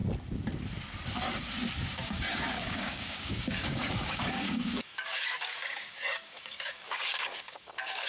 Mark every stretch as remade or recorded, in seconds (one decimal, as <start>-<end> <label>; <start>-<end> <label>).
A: 0.0-1.8 recorded; 1.8-8.1 remade